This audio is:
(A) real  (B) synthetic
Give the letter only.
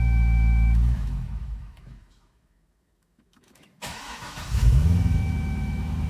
B